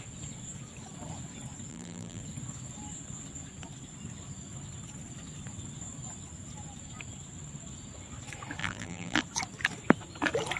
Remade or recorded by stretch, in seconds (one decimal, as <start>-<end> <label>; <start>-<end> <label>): 0.0-1.7 recorded; 1.7-2.2 remade; 2.2-8.6 recorded; 8.6-9.2 remade; 9.2-10.6 recorded